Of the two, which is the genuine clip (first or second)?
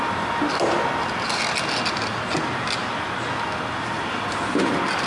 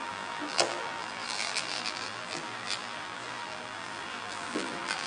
first